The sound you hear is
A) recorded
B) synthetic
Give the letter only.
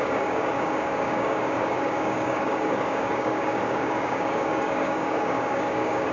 B